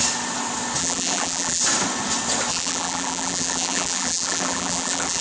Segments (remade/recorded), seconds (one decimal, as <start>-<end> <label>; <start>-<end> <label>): 0.0-0.8 recorded; 0.8-1.6 remade; 1.6-2.5 recorded; 2.5-5.2 remade